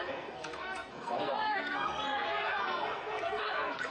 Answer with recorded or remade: remade